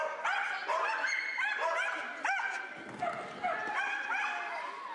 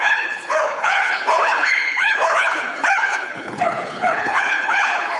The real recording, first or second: first